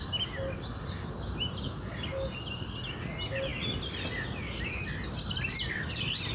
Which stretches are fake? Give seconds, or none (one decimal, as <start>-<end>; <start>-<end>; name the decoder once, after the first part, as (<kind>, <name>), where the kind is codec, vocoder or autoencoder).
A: none